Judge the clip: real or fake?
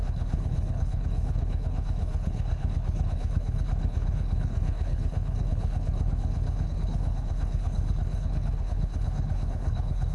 fake